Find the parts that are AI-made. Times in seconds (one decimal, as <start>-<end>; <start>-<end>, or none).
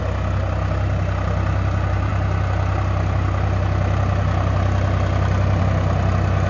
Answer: none